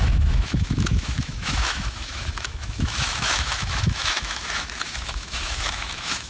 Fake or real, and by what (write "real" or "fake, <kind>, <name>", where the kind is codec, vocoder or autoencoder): fake, autoencoder, DAC-VAE